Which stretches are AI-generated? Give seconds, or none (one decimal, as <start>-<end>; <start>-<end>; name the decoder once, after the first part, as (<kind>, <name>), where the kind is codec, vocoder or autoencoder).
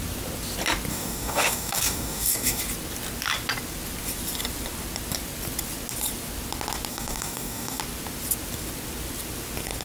0.9-2.6 (codec, DAC); 6.9-7.8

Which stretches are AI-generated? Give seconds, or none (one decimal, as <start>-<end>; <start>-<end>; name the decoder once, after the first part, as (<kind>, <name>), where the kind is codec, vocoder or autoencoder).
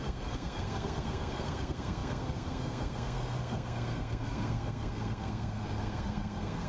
0.0-6.7 (codec, SNAC)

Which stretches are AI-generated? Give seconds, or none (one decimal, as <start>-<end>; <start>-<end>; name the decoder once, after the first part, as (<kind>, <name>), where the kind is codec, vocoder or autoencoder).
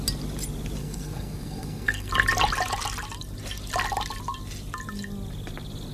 0.8-2.1 (codec, SNAC)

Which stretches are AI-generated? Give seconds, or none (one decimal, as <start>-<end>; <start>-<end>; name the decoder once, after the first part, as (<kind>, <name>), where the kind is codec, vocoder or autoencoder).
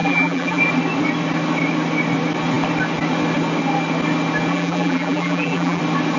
0.0-0.6 (vocoder, BigVGAN v2); 4.5-5.8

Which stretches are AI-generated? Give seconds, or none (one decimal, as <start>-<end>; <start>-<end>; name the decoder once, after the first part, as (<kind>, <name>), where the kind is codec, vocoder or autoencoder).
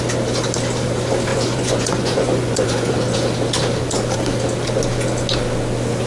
1.3-2.9 (vocoder, Vocos)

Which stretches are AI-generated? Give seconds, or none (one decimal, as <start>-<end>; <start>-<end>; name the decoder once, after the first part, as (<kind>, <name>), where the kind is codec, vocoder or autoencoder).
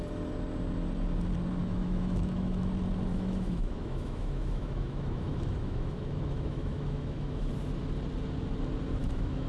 1.6-2.7 (autoencoder, DAC-VAE); 3.1-7.5; 9.0-9.5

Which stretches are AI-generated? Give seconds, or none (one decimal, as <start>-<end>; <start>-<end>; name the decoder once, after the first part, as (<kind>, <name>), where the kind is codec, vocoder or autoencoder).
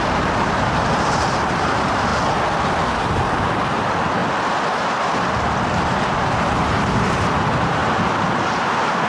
0.0-2.1 (vocoder, BigVGAN v2); 2.9-4.2; 5.8-7.8; 8.5-9.1